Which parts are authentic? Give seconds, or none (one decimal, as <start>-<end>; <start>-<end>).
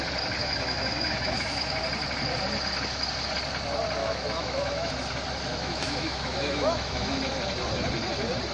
0.0-0.4; 1.8-4.0; 4.9-5.5; 7.1-8.5